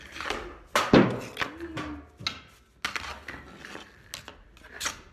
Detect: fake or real real